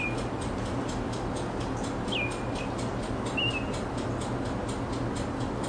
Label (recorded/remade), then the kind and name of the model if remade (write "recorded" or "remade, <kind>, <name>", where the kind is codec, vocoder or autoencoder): recorded